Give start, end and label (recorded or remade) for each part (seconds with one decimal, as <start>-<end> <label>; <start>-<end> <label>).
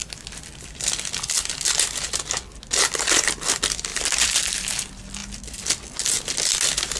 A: 0.0-3.9 recorded; 3.9-4.6 remade; 4.6-7.0 recorded